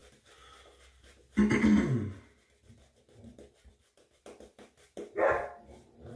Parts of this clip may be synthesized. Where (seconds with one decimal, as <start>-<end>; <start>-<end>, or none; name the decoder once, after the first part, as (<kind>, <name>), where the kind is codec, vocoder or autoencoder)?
3.7-6.2 (vocoder, BigVGAN v2)